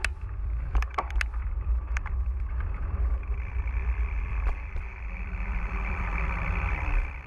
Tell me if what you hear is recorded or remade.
remade